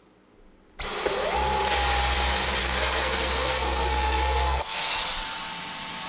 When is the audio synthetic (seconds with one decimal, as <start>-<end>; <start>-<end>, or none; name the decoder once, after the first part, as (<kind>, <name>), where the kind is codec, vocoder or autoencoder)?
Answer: 2.6-5.0 (codec, SNAC)